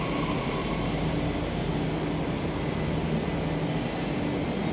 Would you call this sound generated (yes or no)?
no